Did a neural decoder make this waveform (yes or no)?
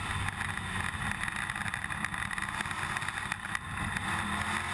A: no